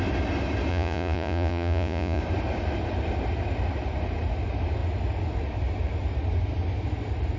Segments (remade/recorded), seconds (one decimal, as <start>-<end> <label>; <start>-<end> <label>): 0.0-0.7 recorded; 0.7-2.2 remade; 2.2-7.4 recorded